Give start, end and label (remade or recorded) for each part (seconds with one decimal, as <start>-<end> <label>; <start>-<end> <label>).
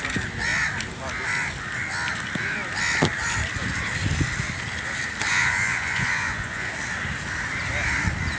0.0-5.3 recorded; 5.3-6.7 remade; 6.7-8.4 recorded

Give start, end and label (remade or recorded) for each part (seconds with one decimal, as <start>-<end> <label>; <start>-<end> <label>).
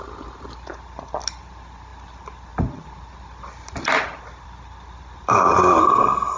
0.0-5.8 recorded; 5.8-6.4 remade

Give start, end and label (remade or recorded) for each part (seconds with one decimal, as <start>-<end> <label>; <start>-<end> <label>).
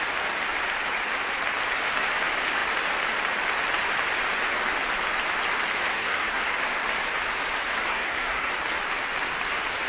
0.0-5.9 recorded; 5.9-6.4 remade; 6.4-7.9 recorded; 7.9-8.5 remade; 8.5-9.9 recorded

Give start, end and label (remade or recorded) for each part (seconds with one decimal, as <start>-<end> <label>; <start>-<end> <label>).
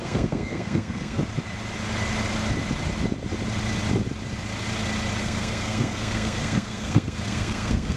0.0-1.2 remade; 1.2-5.2 recorded; 5.2-8.0 remade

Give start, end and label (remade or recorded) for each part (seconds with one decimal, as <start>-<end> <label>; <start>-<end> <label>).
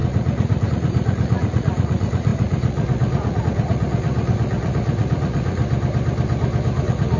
0.0-5.6 remade; 5.6-6.8 recorded; 6.8-7.2 remade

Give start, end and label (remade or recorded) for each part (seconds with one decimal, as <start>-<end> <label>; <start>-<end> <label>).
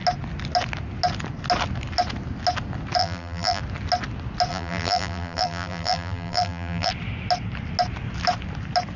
0.0-3.0 recorded; 3.0-3.6 remade; 3.6-4.5 recorded; 4.5-6.9 remade; 6.9-9.0 recorded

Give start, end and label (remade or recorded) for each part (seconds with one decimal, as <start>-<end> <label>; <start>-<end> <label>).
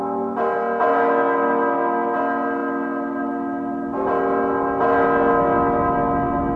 0.0-6.6 recorded